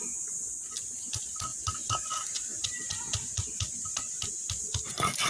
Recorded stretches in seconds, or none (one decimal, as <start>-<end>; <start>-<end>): 0.0-1.5; 2.1-2.5; 3.0-5.3